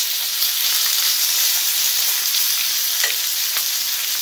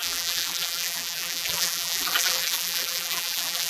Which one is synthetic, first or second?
second